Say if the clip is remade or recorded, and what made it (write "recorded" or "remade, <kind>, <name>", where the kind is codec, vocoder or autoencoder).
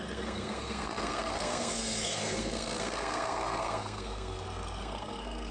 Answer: remade, codec, SNAC